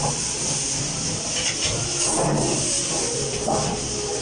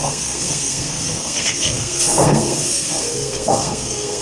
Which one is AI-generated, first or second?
second